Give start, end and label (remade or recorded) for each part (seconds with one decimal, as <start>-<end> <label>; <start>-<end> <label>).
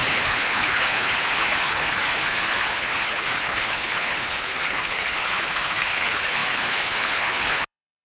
0.0-8.0 remade